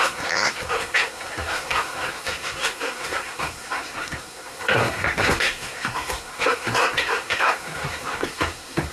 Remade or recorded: remade